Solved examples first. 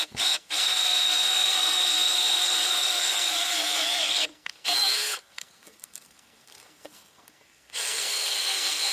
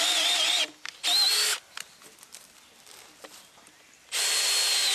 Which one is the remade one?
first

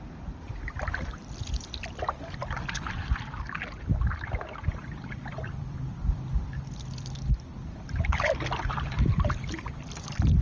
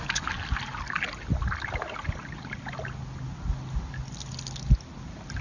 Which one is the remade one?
first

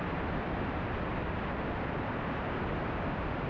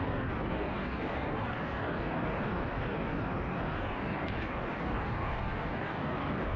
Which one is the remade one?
second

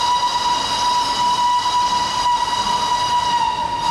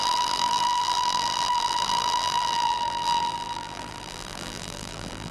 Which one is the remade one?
second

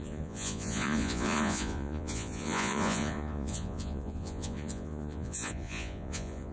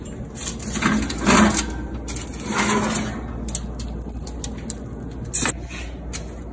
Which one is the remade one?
first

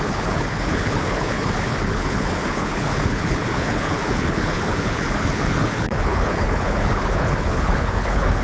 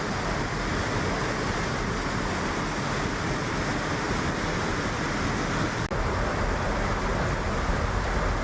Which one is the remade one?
first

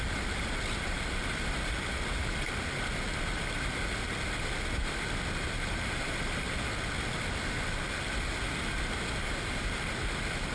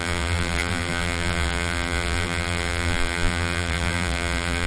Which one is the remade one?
second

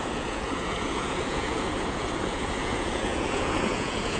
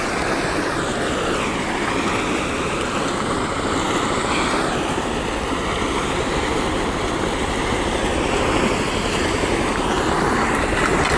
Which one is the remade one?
first